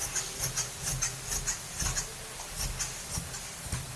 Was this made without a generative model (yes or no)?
yes